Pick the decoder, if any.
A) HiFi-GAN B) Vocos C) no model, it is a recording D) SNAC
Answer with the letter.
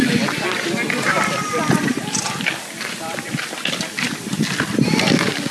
C